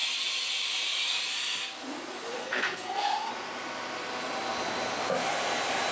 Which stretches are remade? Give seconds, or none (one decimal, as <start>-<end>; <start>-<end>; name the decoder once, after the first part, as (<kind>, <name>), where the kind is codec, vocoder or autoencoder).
2.4-3.3 (codec, SNAC)